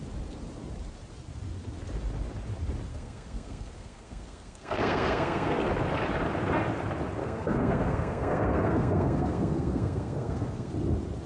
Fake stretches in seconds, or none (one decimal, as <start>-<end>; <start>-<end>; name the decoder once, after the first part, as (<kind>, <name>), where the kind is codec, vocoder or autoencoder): 2.9-5.6 (codec, SNAC); 7.2-10.7

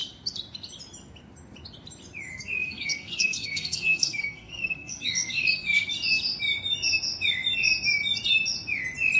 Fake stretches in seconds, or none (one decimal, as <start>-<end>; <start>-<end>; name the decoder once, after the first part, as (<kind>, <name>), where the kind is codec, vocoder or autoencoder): 2.3-5.9 (codec, SNAC)

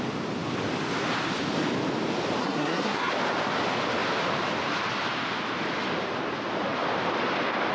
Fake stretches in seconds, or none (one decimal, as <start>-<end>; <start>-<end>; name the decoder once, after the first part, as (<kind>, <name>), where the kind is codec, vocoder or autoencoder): 2.4-3.1 (codec, SNAC)